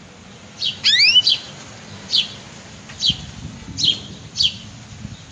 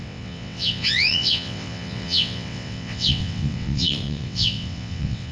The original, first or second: first